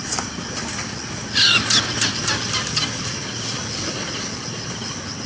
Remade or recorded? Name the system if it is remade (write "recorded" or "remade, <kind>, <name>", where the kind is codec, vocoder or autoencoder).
recorded